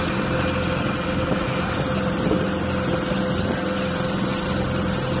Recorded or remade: recorded